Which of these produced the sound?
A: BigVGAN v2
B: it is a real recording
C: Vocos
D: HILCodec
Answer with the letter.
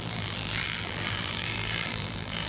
A